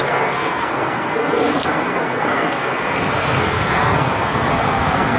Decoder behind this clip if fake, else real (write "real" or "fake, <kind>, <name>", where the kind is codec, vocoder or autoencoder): fake, codec, SNAC